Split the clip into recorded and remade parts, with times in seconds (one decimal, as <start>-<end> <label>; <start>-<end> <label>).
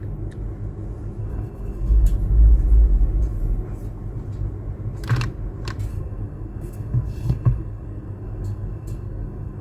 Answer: 0.0-1.2 recorded; 1.2-2.1 remade; 2.1-5.9 recorded; 5.9-9.6 remade